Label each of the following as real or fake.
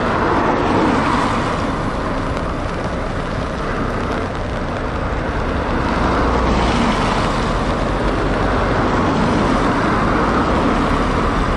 real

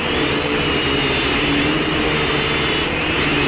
real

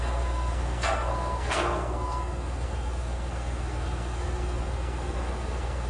fake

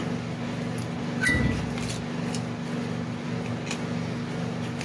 real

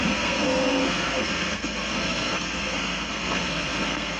fake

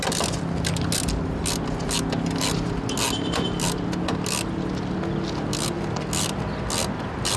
real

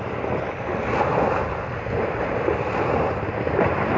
real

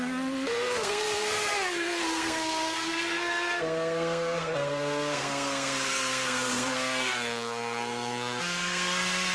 fake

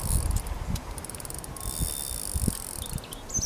real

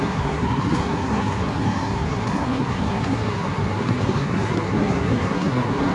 fake